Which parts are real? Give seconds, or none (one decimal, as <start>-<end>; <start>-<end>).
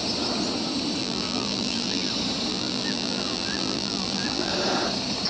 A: 0.0-1.0; 2.1-2.5; 4.5-5.3